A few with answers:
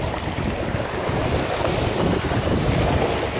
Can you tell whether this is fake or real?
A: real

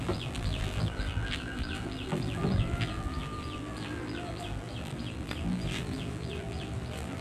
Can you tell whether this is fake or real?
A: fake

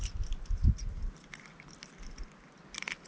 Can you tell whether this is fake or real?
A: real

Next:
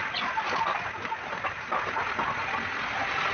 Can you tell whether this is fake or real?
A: real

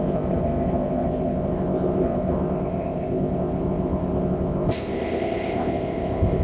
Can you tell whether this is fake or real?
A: fake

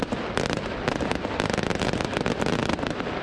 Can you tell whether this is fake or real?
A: real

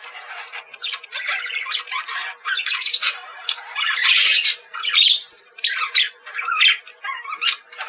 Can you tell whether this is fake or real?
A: fake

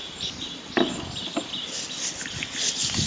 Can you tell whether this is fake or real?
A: real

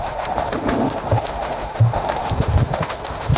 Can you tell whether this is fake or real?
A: fake